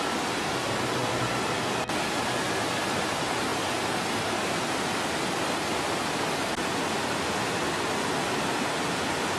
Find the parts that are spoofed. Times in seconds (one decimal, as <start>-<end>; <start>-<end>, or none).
none